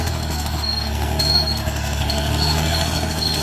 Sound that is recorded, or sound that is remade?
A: remade